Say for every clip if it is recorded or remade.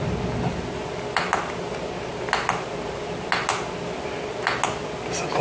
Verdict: recorded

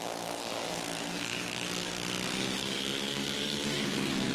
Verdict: remade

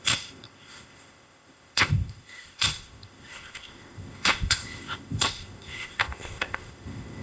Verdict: remade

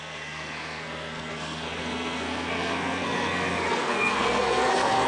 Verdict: remade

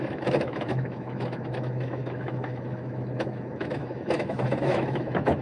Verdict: remade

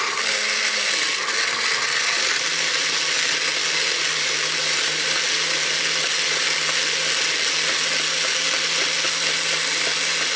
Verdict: recorded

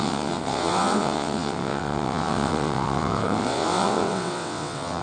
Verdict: remade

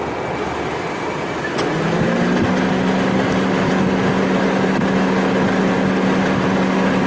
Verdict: recorded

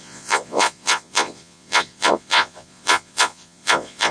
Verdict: remade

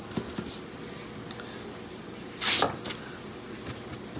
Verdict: recorded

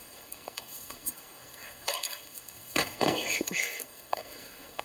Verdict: remade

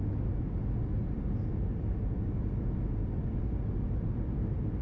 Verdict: recorded